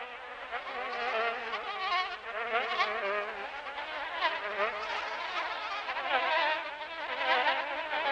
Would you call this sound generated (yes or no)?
no